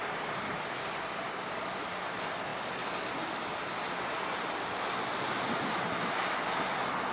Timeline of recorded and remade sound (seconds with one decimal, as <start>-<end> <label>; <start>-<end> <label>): 0.0-7.1 recorded